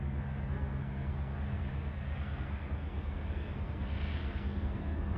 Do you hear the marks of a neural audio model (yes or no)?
yes